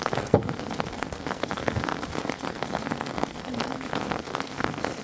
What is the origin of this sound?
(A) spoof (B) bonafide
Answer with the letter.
A